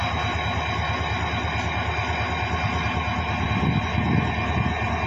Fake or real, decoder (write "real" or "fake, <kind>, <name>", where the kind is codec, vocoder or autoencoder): real